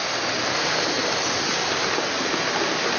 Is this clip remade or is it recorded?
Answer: recorded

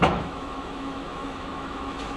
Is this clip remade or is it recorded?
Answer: remade